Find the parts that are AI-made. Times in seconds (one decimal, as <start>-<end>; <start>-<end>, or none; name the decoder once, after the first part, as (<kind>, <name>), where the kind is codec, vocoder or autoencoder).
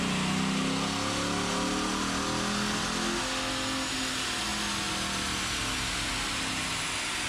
none